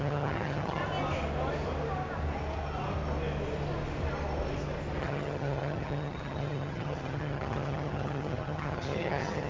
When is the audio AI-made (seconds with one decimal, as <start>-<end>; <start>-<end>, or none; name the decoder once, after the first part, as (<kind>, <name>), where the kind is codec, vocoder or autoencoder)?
0.0-0.8 (vocoder, HiFi-GAN); 5.0-9.5